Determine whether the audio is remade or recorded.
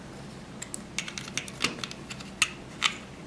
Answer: recorded